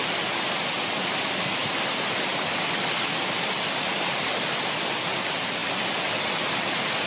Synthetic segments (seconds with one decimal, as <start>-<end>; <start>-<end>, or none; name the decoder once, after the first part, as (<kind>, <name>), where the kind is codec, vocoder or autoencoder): none